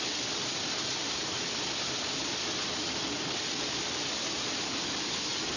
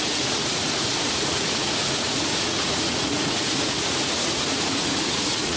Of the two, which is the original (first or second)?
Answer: first